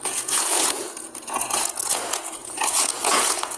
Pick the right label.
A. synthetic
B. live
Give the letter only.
A